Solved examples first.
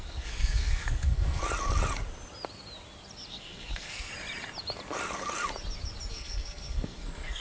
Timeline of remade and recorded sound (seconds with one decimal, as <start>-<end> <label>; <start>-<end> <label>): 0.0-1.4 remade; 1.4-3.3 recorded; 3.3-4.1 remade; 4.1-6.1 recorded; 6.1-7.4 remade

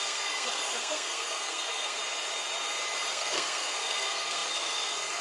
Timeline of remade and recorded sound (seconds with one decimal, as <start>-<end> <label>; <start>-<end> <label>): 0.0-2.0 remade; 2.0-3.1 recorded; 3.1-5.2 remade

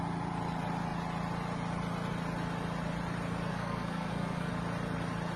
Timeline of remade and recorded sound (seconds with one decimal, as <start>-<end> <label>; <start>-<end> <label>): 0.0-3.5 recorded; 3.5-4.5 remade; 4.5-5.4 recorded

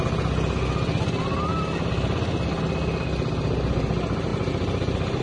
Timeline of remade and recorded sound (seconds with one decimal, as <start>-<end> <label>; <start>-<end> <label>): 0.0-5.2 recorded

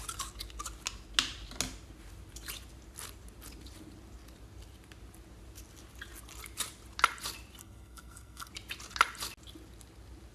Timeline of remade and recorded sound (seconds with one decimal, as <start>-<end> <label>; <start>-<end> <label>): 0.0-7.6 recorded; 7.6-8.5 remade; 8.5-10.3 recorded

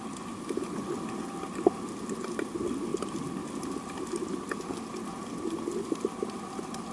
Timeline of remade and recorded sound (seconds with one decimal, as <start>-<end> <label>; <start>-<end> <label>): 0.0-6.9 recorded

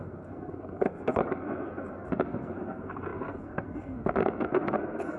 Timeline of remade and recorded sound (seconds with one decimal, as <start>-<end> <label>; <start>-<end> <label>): 0.0-5.2 remade